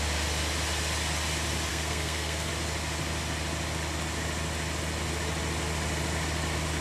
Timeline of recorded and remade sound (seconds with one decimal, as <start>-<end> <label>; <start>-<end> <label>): 0.0-1.7 recorded; 1.7-2.5 remade; 2.5-6.8 recorded